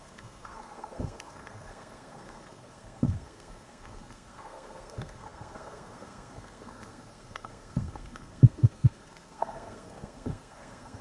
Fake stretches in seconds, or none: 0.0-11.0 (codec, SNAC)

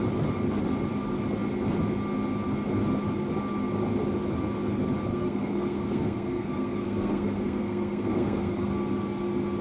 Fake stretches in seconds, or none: 5.1-8.7 (codec, SNAC)

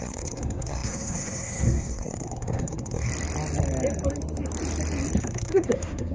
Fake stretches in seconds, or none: 0.0-3.1 (codec, SNAC); 5.2-6.1